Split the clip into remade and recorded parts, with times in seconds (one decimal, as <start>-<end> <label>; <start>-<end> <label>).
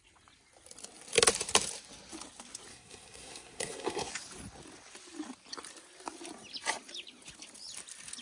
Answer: 0.0-2.7 recorded; 2.7-4.1 remade; 4.1-8.2 recorded